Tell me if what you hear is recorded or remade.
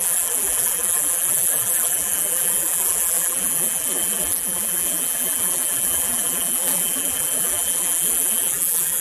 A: remade